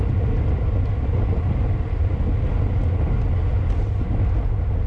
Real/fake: real